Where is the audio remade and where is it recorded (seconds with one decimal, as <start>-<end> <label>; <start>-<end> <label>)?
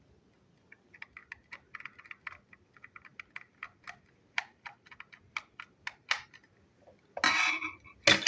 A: 0.0-8.3 recorded